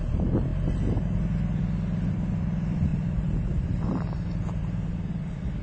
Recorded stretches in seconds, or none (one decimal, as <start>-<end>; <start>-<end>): 0.0-2.9; 4.6-5.6